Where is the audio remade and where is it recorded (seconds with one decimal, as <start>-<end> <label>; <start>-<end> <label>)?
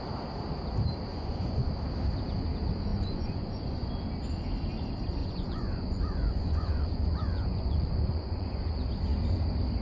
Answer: 0.0-1.1 recorded; 1.1-1.7 remade; 1.7-2.9 recorded; 2.9-3.9 remade; 3.9-5.2 recorded; 5.2-8.7 remade; 8.7-9.8 recorded